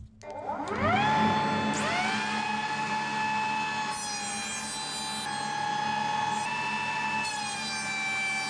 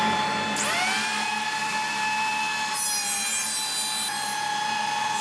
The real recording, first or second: first